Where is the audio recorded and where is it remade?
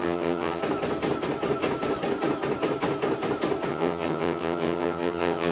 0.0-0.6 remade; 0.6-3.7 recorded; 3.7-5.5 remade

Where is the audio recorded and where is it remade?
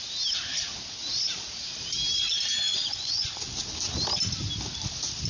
0.0-2.7 recorded; 2.7-3.6 remade; 3.6-5.3 recorded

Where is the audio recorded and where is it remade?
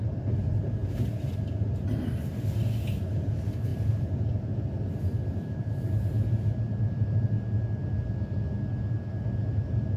0.0-3.7 recorded; 3.7-7.4 remade; 7.4-10.0 recorded